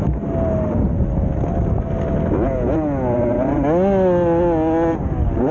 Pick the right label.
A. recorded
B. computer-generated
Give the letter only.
A